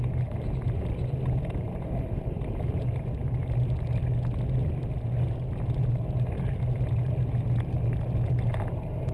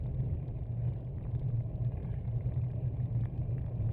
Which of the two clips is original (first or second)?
first